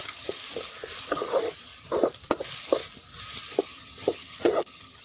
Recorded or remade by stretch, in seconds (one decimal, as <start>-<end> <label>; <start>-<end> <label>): 0.0-0.4 remade; 0.4-1.0 recorded; 1.0-1.7 remade; 1.7-3.6 recorded; 3.6-5.0 remade